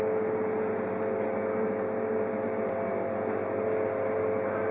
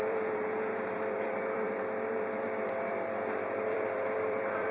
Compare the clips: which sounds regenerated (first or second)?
second